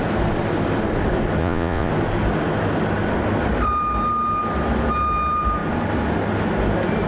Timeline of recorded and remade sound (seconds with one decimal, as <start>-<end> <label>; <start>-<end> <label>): 0.0-1.4 recorded; 1.4-1.9 remade; 1.9-7.1 recorded